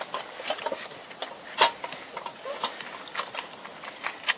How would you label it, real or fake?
real